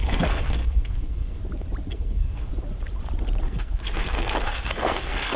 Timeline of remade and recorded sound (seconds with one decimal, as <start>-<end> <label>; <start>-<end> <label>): 0.0-1.4 remade; 1.4-1.9 recorded; 1.9-2.5 remade; 2.5-3.4 recorded; 3.4-5.4 remade